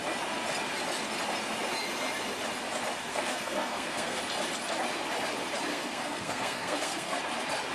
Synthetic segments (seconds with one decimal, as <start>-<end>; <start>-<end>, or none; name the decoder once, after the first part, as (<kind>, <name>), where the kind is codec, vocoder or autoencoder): 3.1-4.2 (codec, SNAC); 5.7-7.2